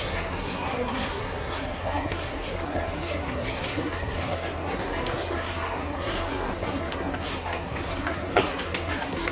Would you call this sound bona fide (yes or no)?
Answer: no